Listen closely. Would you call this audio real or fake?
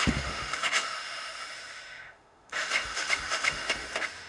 fake